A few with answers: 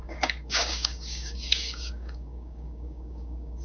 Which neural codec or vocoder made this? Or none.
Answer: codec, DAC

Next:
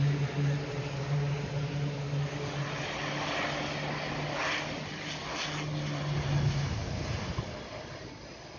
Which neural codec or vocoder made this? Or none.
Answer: none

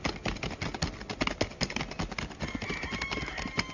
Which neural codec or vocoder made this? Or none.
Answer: none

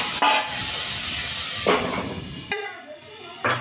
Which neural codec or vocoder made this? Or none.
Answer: none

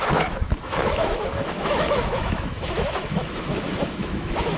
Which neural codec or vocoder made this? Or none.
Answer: autoencoder, DAC-VAE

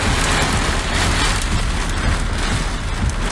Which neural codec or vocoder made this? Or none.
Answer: none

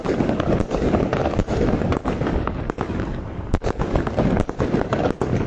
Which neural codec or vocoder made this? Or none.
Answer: codec, DAC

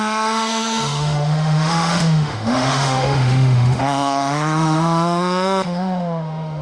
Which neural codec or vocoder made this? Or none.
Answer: autoencoder, DAC-VAE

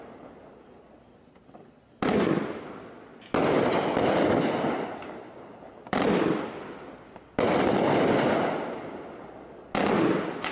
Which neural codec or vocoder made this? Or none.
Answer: none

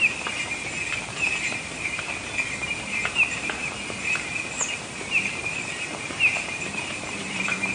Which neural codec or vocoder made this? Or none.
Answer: vocoder, BigVGAN v2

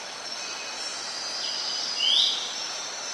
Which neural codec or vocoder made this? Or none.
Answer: none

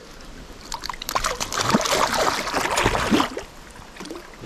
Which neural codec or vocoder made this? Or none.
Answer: none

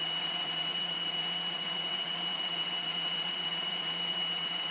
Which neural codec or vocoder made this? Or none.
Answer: vocoder, WaveNeXt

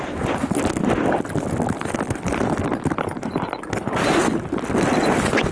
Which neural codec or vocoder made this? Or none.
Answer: none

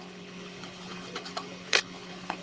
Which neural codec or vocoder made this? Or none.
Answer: codec, HILCodec